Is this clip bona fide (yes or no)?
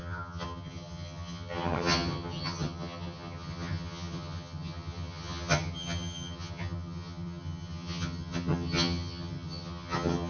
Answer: no